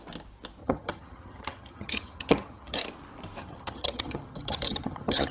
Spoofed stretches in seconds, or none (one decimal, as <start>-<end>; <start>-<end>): 0.6-2.8; 3.4-5.3